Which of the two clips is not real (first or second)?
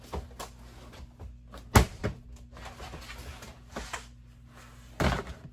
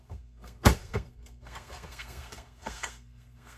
second